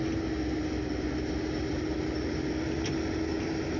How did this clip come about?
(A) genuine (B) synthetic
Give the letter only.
A